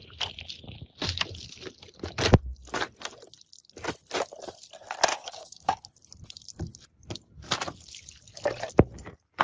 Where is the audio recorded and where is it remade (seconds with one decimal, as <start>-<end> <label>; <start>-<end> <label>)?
0.0-5.1 recorded; 5.1-5.8 remade; 5.8-9.4 recorded